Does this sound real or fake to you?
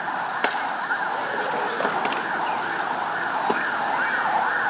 real